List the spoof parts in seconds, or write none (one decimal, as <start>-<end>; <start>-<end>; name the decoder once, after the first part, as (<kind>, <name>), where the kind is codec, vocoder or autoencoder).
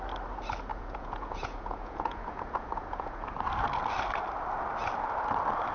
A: 0.7-3.3 (vocoder, Vocos)